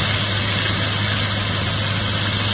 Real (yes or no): yes